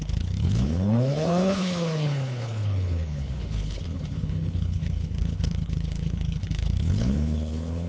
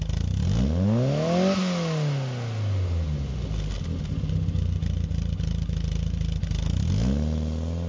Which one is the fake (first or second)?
first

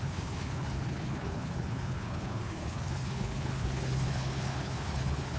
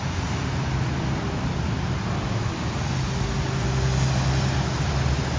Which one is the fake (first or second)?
first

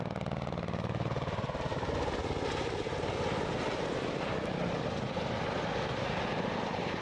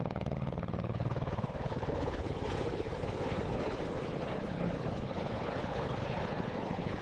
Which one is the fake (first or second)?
second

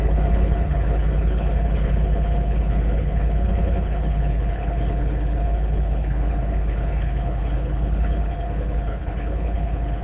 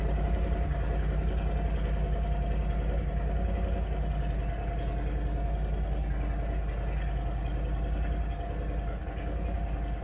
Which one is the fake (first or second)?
first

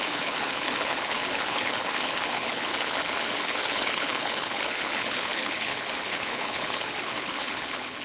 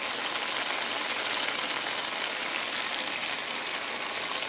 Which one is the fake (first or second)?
first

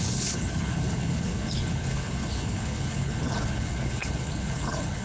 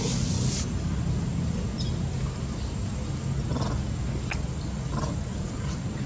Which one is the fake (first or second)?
first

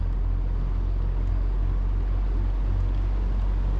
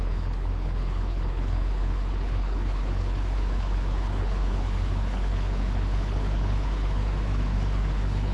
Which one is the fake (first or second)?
second